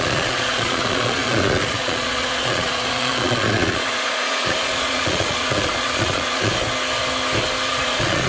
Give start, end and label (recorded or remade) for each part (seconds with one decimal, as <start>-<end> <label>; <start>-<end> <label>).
0.0-6.5 remade; 6.5-7.7 recorded; 7.7-8.3 remade